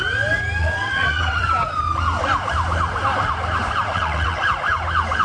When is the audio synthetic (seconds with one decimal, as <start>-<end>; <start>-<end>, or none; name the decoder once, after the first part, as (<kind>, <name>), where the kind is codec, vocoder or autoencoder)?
0.6-1.4 (vocoder, WaveNeXt); 3.9-4.4